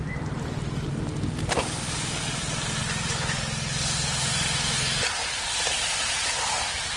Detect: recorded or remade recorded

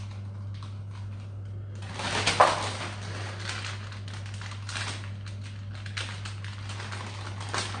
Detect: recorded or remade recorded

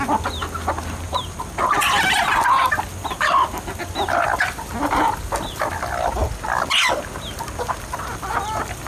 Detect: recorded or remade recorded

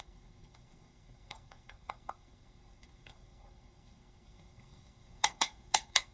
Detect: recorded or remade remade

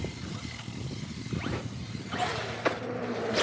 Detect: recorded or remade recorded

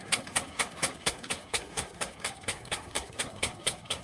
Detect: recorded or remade remade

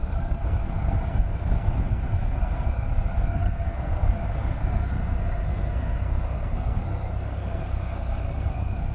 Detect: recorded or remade remade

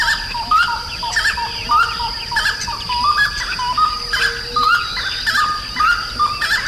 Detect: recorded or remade recorded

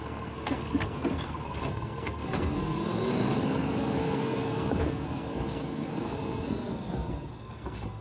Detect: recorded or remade remade